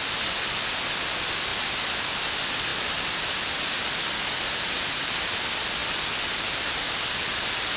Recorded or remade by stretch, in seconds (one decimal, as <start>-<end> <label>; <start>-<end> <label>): 0.0-7.8 recorded